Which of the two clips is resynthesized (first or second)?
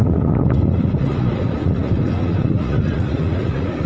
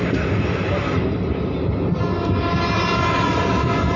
first